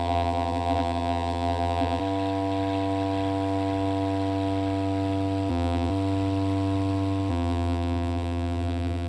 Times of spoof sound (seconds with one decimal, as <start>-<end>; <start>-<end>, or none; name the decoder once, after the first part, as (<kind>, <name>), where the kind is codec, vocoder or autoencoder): 0.0-2.0 (vocoder, BigVGAN v2); 5.5-5.9; 7.3-9.1